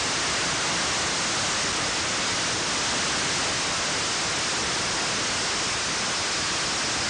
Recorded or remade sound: recorded